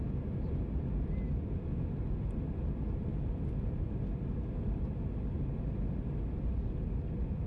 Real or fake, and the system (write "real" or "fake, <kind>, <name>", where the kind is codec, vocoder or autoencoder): real